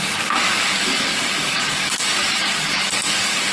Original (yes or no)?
no